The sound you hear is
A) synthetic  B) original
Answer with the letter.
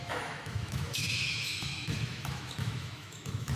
A